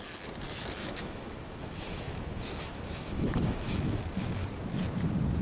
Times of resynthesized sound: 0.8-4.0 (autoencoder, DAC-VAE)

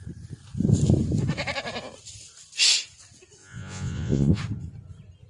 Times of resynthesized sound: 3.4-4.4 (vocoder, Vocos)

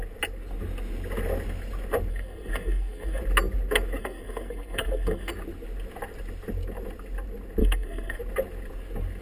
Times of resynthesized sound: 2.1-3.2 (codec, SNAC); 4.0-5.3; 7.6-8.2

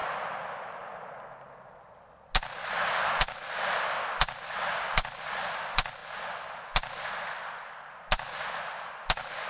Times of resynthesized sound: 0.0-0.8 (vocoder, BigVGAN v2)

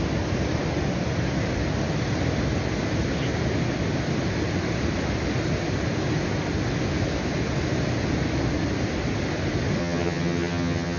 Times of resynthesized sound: 9.8-11.0 (vocoder, HiFi-GAN)

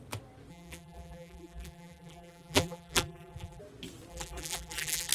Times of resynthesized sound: 0.5-3.6 (vocoder, BigVGAN v2); 4.1-5.1

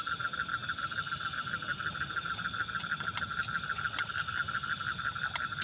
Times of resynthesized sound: none

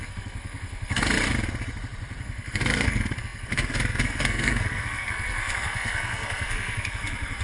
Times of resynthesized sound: 0.0-1.1 (codec, SNAC); 2.2-7.4